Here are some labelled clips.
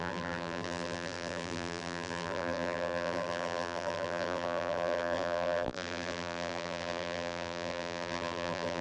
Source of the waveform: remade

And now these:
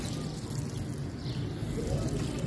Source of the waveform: recorded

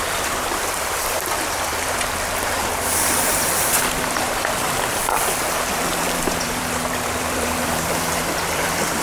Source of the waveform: remade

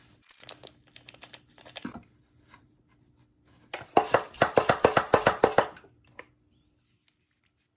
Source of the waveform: recorded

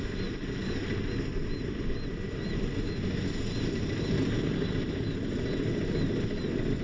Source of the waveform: recorded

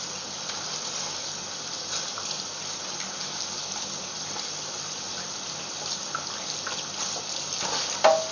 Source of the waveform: recorded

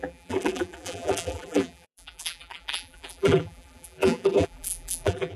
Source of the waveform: remade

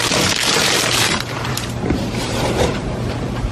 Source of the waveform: remade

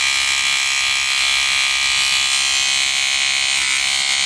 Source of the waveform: recorded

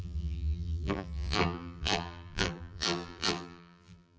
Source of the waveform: remade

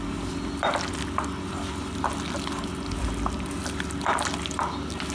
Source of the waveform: recorded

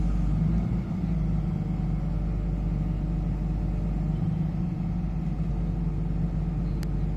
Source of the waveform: recorded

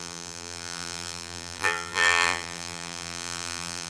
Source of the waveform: remade